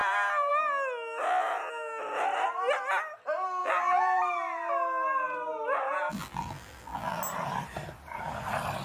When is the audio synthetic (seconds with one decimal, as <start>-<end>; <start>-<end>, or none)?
0.0-0.5; 3.6-4.2; 6.1-7.2